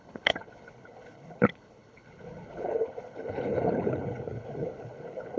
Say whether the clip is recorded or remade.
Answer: remade